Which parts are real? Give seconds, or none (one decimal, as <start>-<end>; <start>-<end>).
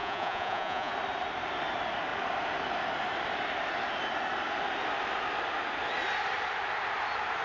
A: 0.9-7.4